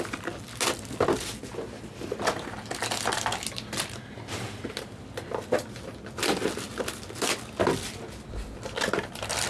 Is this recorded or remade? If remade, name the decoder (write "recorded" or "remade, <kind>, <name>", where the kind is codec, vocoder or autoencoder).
recorded